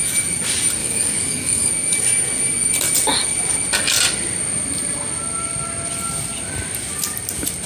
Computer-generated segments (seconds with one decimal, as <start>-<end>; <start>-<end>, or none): 0.8-1.7